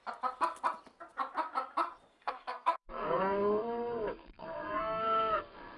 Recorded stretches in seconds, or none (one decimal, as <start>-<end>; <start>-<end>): 0.0-2.1